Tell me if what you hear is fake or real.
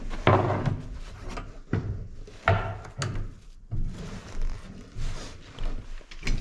real